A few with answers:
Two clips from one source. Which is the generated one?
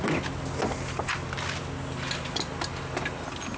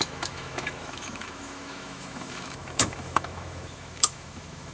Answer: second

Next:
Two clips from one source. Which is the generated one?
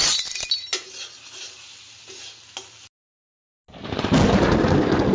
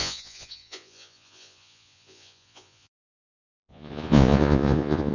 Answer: second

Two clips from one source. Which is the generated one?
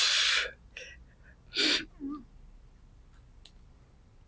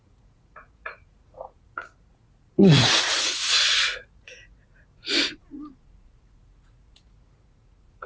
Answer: second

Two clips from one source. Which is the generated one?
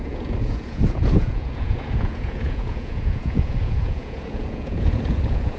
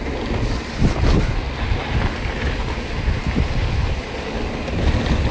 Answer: first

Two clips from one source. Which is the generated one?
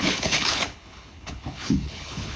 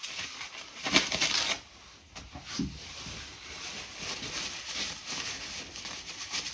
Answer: first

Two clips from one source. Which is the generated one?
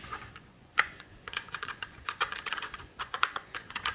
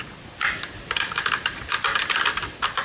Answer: first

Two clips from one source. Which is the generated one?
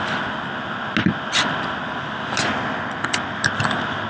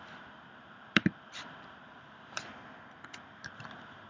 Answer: second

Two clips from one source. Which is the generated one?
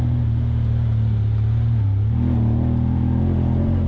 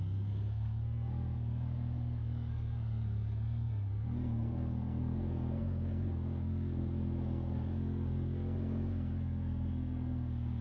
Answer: second